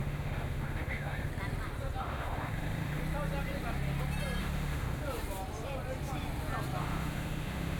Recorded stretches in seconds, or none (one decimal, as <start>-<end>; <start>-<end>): 1.3-2.0; 3.0-4.4; 5.0-6.8